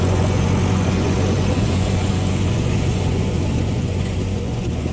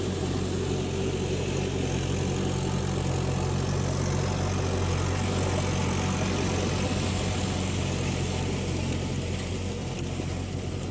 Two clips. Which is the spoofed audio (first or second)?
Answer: first